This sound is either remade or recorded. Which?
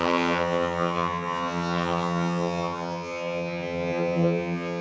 remade